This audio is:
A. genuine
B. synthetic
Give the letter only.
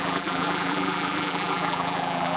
B